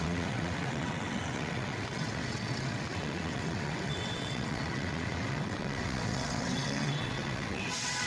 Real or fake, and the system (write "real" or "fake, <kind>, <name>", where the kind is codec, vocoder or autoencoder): fake, vocoder, WaveNeXt